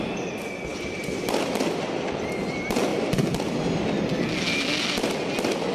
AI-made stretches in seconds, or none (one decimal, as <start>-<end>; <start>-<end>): none